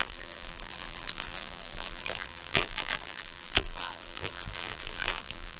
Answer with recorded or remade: remade